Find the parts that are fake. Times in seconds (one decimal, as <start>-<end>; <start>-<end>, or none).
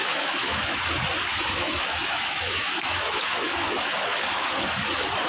0.0-0.8; 1.3-4.5